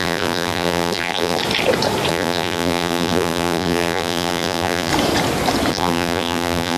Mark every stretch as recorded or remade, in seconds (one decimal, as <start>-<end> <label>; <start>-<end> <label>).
0.0-1.4 remade; 1.4-2.1 recorded; 2.1-4.9 remade; 4.9-5.7 recorded; 5.7-6.8 remade